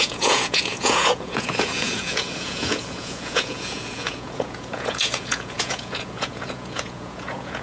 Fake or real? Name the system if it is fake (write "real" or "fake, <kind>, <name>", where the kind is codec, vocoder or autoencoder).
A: fake, vocoder, Vocos